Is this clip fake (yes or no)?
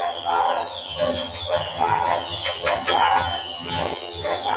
yes